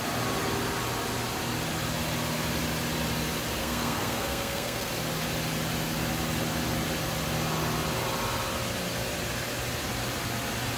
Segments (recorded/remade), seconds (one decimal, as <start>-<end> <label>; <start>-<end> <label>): 0.0-3.6 recorded; 3.6-4.9 remade; 4.9-10.8 recorded